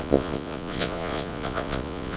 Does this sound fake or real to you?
fake